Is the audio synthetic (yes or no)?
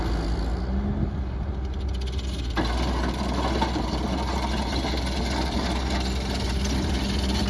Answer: no